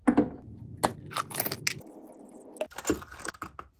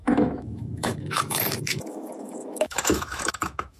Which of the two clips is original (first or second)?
first